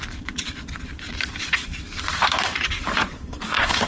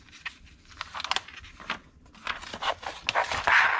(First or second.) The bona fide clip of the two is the second